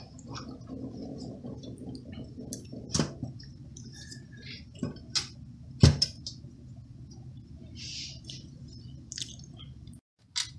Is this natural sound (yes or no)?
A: yes